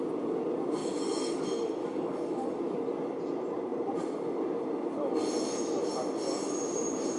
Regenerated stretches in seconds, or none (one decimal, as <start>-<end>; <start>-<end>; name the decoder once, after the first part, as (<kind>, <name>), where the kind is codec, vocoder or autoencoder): 0.8-1.4 (codec, DAC); 1.8-2.6